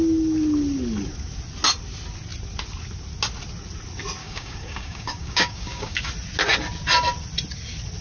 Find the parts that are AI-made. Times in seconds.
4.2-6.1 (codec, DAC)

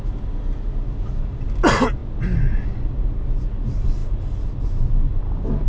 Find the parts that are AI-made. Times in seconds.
none

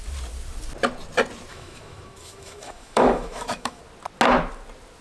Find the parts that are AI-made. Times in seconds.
1.5-3.8 (autoencoder, DAC-VAE)

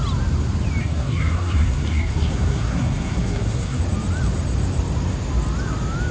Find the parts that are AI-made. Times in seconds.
0.8-3.8 (codec, SNAC)

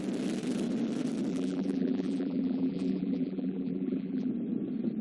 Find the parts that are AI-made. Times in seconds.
1.3-4.3 (vocoder, BigVGAN v2)

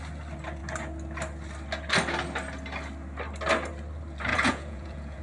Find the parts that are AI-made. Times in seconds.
4.3-5.2 (vocoder, Vocos)

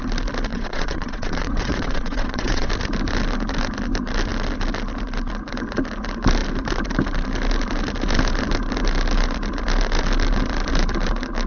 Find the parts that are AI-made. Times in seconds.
0.5-2.7 (vocoder, WaveNeXt)